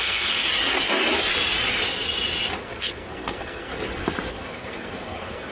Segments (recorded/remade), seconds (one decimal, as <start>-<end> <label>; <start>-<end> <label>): 0.0-0.4 remade; 0.4-2.6 recorded; 2.6-3.7 remade; 3.7-4.3 recorded; 4.3-5.5 remade